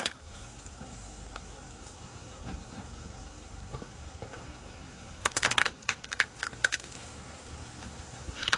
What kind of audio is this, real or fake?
fake